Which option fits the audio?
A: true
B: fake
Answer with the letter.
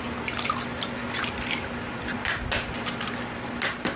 A